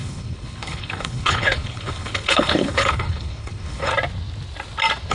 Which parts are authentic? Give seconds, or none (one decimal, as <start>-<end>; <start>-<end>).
3.9-5.1